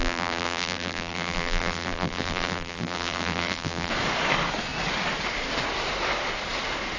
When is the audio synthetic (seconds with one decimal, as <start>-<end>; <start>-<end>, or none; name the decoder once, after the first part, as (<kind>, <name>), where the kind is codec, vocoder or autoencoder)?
0.0-3.9 (vocoder, BigVGAN v2)